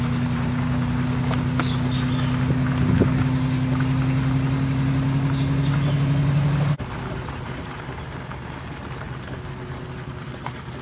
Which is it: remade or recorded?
recorded